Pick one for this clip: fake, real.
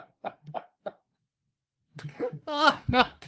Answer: fake